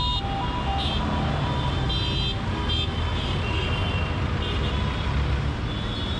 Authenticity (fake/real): real